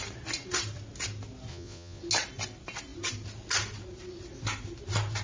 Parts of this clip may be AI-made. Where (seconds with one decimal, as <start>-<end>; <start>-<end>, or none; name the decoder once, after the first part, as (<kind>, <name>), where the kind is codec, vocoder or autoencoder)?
1.5-2.0 (vocoder, Vocos)